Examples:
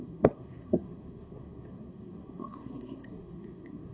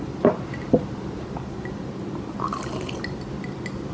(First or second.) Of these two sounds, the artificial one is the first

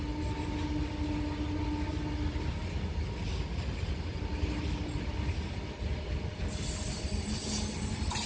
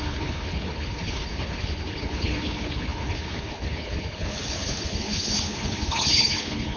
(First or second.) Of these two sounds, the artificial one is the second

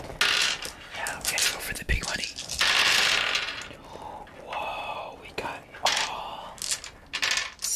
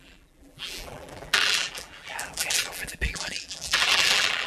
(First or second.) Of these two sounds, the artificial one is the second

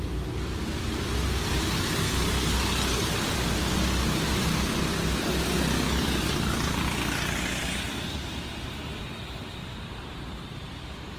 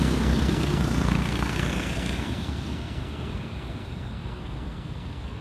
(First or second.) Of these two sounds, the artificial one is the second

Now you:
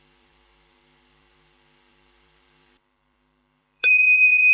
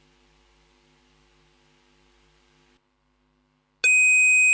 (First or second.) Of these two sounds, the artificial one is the first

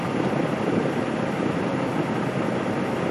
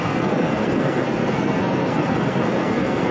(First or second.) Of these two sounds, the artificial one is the second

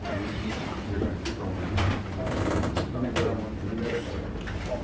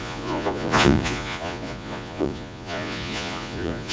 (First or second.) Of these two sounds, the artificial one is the second